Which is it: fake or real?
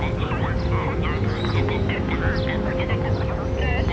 real